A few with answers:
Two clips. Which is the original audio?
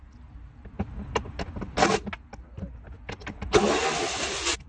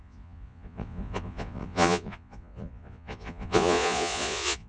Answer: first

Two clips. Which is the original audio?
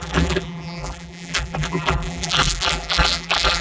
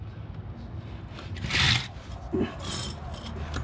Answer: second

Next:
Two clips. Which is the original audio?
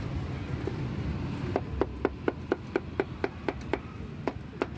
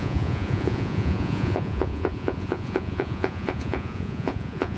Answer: first